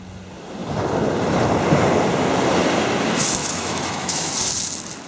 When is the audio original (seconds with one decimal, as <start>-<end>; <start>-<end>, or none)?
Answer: 0.0-3.4; 4.3-5.1